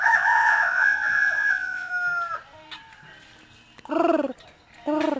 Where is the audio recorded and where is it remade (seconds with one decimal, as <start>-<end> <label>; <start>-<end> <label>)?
0.0-1.9 remade; 1.9-5.2 recorded